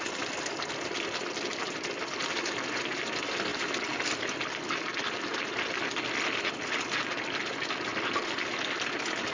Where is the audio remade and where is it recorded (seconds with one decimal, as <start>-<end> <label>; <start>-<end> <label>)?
0.0-9.3 recorded